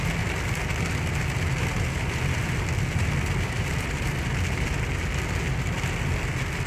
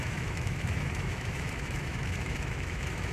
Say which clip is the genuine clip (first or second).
first